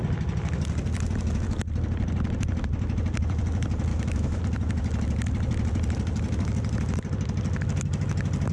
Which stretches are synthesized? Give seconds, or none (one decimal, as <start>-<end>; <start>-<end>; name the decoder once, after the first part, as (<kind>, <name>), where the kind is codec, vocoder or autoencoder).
3.9-4.4 (autoencoder, DAC-VAE)

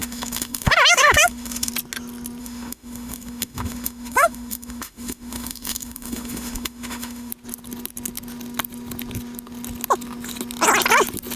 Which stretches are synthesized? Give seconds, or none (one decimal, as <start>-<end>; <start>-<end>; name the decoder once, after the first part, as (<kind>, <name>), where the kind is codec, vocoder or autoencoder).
0.0-1.7 (autoencoder, DAC-VAE); 2.4-7.3

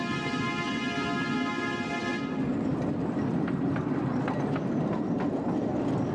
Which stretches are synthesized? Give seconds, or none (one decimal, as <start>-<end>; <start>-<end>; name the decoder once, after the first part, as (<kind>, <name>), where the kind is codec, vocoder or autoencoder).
none

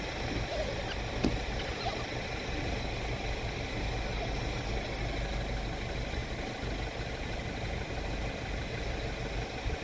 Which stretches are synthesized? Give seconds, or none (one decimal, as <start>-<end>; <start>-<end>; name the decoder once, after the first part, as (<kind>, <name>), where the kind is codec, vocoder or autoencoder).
none

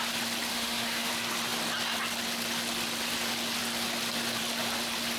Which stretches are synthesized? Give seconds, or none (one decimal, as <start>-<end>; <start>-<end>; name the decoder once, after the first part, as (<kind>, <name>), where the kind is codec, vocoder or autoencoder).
0.5-1.1 (autoencoder, DAC-VAE)

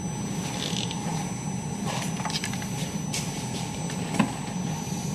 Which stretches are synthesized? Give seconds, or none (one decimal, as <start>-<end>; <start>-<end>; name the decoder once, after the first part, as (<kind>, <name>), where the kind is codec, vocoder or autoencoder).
none

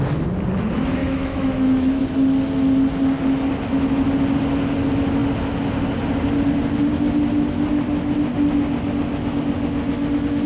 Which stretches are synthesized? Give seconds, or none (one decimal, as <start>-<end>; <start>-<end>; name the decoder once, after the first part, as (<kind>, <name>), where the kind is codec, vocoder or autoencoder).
1.0-2.0 (autoencoder, DAC-VAE)

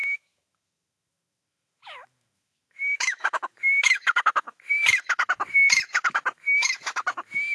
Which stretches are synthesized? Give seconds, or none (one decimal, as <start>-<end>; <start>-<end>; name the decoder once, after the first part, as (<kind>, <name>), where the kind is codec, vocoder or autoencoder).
0.0-7.5 (autoencoder, DAC-VAE)